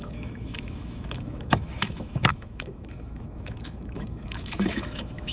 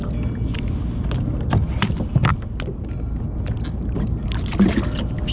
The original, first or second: second